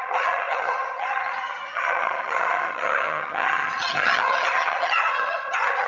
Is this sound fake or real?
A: fake